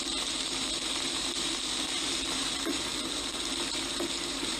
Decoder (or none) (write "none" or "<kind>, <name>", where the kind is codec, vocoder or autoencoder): vocoder, BigVGAN v2